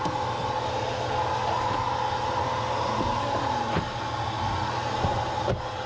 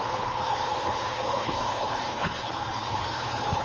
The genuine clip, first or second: first